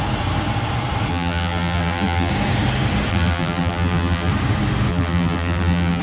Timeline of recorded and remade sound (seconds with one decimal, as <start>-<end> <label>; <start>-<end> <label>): 0.0-1.1 recorded; 1.1-2.3 remade; 2.3-3.1 recorded; 3.1-4.3 remade; 4.3-4.9 recorded; 4.9-6.0 remade